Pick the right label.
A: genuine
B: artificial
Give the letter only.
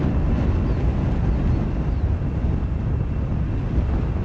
A